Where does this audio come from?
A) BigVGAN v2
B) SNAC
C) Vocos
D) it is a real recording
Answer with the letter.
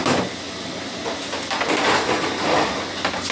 D